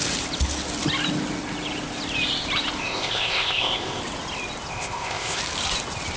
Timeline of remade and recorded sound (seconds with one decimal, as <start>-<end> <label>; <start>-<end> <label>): 0.0-2.8 recorded; 2.8-4.0 remade; 4.0-4.7 recorded; 4.7-5.4 remade; 5.4-6.2 recorded